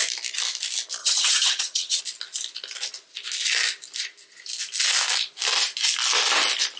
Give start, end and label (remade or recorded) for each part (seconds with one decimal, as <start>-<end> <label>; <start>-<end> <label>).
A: 0.0-1.0 recorded; 1.0-2.0 remade; 2.0-6.8 recorded